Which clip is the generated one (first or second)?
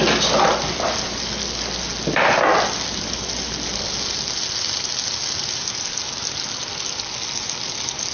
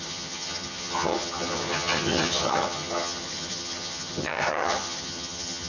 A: second